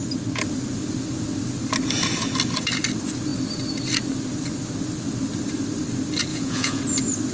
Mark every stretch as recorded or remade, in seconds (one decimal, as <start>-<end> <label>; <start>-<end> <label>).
0.0-6.3 recorded; 6.3-6.8 remade; 6.8-7.3 recorded